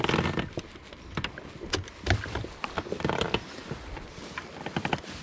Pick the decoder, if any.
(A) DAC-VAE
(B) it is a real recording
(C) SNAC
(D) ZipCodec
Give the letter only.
B